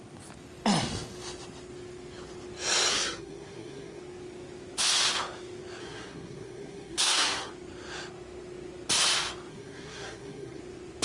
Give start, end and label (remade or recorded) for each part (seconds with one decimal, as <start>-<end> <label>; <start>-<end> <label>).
0.0-2.9 recorded; 2.9-4.0 remade; 4.0-5.8 recorded; 5.8-7.5 remade; 7.5-9.5 recorded; 9.5-10.6 remade; 10.6-11.0 recorded